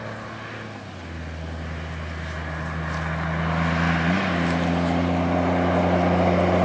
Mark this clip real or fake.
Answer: real